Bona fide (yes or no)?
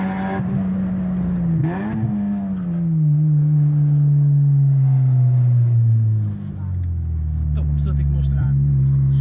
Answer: yes